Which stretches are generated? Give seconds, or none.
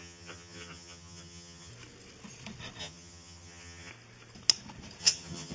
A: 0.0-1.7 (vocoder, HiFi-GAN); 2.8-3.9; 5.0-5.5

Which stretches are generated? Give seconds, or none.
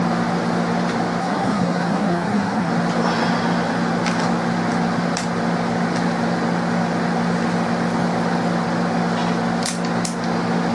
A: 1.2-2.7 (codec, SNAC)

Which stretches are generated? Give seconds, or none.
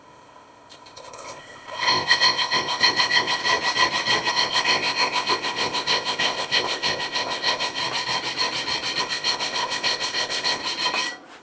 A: 0.0-3.4 (codec, ZipCodec); 4.3-7.8; 9.0-10.6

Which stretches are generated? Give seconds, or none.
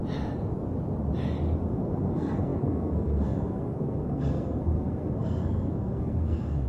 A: 1.6-6.7 (codec, SNAC)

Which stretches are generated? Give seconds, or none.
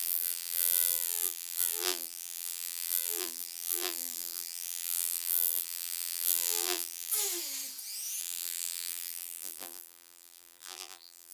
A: 0.0-7.1 (vocoder, BigVGAN v2); 8.2-11.3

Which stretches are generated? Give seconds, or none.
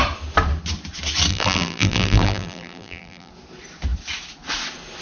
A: 1.3-3.3 (vocoder, BigVGAN v2)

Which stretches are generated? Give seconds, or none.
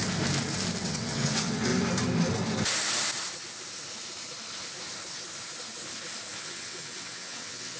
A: 0.8-1.7 (vocoder, WaveNeXt); 6.4-7.8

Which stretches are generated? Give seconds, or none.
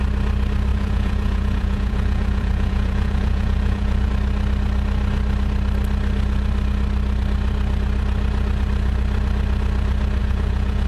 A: 0.7-4.1 (vocoder, Vocos); 10.2-10.9